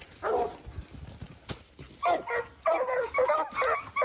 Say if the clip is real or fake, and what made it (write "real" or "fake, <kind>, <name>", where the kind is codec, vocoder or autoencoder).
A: real